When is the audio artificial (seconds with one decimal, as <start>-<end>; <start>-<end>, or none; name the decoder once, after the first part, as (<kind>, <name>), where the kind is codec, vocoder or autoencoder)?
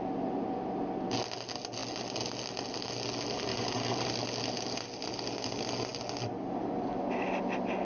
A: 3.5-4.1 (vocoder, BigVGAN v2)